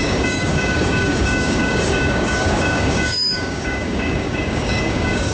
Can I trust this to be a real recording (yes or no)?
no